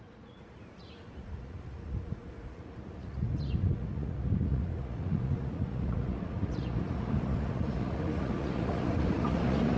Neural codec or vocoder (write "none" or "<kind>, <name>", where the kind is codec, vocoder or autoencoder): vocoder, Vocos